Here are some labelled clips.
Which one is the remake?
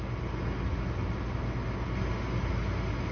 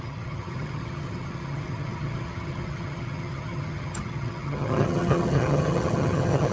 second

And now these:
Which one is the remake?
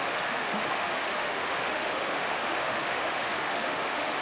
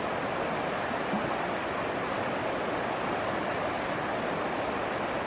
first